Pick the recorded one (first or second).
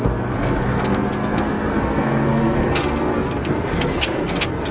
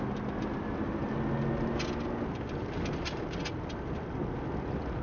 second